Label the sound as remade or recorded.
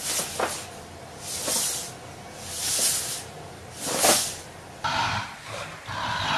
recorded